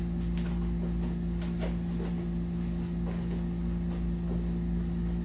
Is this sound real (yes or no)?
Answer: yes